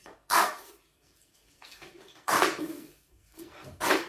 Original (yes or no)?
no